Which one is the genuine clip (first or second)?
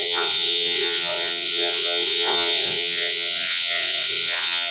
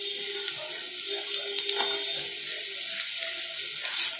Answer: second